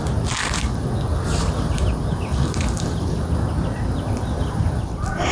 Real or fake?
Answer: real